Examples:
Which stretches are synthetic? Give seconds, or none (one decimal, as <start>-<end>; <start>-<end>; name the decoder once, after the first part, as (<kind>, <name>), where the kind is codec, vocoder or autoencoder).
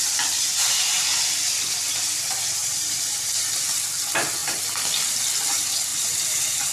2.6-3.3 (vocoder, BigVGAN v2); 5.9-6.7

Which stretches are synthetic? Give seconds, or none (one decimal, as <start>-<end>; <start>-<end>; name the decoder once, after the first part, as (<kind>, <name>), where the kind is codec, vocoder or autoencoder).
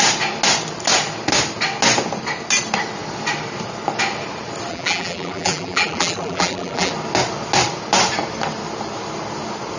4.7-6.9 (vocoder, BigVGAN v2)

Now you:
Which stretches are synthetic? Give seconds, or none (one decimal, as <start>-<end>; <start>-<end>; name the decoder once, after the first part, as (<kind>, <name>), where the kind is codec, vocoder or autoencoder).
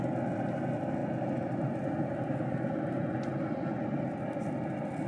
none